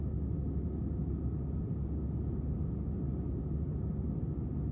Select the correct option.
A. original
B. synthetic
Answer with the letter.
A